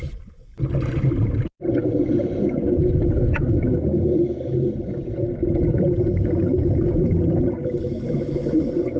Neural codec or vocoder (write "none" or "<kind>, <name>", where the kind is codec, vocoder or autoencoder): none